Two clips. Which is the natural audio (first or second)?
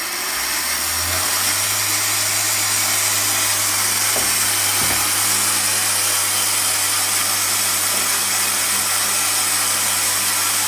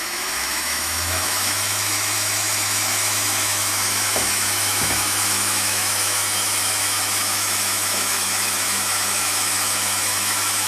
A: first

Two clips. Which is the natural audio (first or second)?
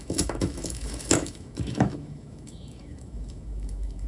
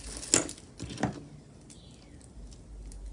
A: second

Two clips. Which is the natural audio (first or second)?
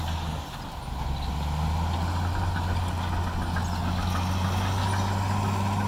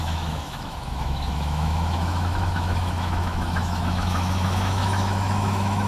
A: first